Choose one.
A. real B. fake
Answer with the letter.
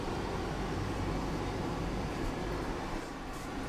A